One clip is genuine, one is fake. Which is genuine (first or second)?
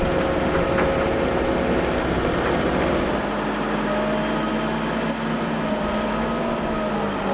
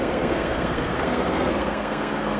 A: first